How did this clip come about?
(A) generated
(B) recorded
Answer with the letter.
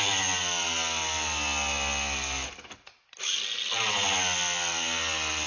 B